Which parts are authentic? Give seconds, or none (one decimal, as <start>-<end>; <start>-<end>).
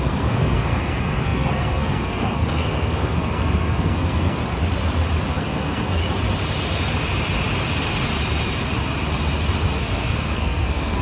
4.4-5.3; 6.0-9.8